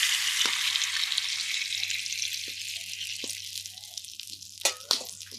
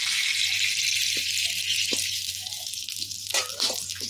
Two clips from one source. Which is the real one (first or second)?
first